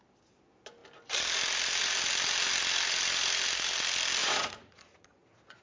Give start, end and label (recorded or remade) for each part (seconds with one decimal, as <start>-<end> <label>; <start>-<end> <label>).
0.0-4.2 recorded; 4.2-5.6 remade